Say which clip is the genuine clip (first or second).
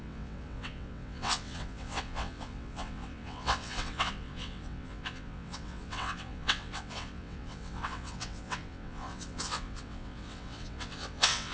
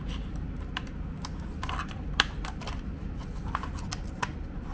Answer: second